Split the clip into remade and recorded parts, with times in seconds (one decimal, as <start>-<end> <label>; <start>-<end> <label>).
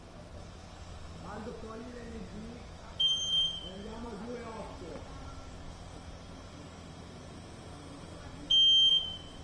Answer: 0.0-0.7 remade; 0.7-1.5 recorded; 1.5-4.3 remade; 4.3-8.9 recorded; 8.9-9.4 remade